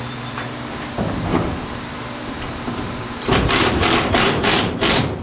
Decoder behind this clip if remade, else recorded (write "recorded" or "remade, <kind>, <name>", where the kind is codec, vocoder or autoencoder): remade, vocoder, BigVGAN v2